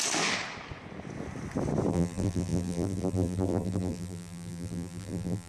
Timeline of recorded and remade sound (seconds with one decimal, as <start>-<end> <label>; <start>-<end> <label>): 0.0-1.9 recorded; 1.9-5.5 remade